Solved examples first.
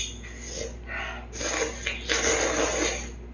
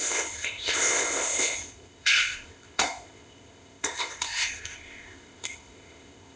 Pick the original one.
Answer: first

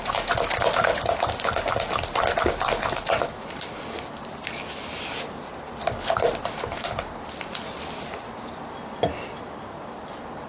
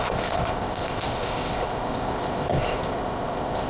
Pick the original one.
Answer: first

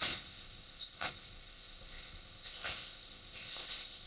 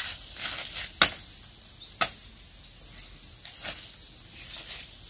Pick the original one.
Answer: second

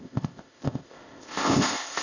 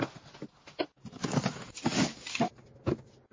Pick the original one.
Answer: second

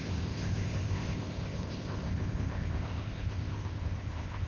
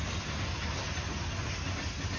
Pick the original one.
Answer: second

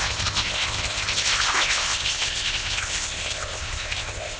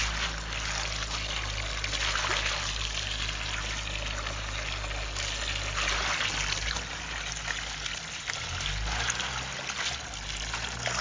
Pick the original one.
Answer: second